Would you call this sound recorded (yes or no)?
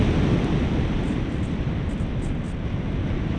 yes